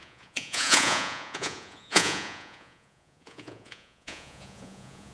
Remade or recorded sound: remade